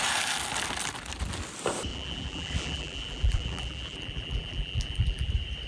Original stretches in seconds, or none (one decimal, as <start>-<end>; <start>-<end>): 0.0-1.9; 5.3-5.7

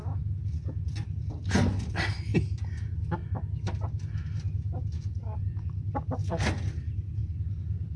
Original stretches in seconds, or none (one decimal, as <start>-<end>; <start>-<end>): 0.0-7.2

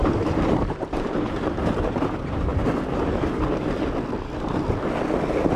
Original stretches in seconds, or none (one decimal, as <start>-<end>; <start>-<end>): 2.5-5.6

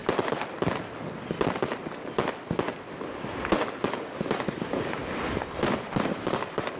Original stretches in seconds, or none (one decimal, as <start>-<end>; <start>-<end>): 0.0-4.1